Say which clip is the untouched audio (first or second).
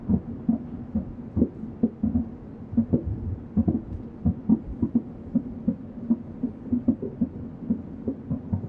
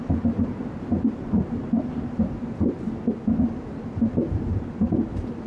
first